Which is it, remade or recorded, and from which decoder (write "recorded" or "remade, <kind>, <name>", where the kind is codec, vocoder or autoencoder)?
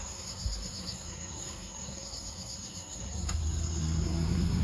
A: remade, codec, SNAC